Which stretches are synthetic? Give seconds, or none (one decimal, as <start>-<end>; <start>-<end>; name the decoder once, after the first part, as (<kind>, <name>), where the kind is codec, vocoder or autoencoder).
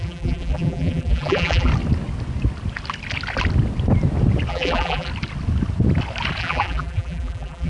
0.0-1.7 (vocoder, BigVGAN v2); 4.5-5.1; 6.4-7.7